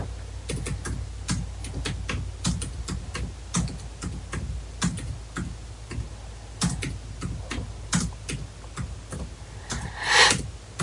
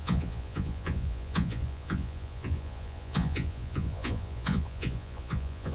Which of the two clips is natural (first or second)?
first